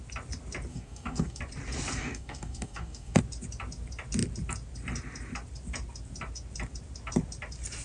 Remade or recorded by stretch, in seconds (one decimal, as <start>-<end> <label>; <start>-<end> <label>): 0.0-0.7 recorded; 0.7-1.4 remade; 1.4-2.0 recorded; 2.0-3.2 remade; 3.2-7.8 recorded